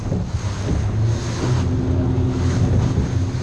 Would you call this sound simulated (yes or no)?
no